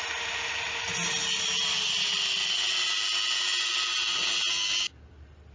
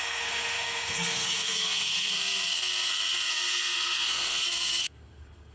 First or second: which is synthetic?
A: second